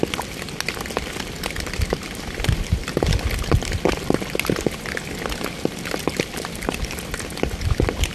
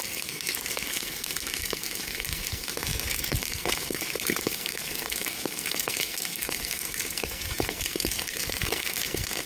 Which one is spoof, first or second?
second